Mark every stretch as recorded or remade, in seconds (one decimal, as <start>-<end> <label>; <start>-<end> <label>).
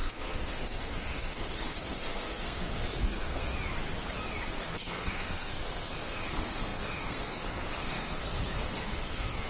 0.0-3.5 remade; 3.5-4.6 recorded; 4.6-9.5 remade